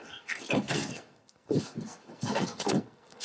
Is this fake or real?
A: fake